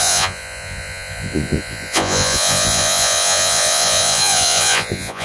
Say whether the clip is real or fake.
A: fake